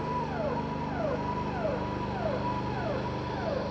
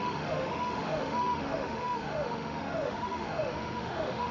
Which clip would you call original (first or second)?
first